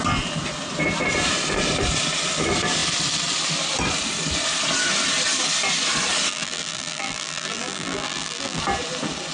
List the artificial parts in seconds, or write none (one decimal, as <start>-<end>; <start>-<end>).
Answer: 6.3-8.6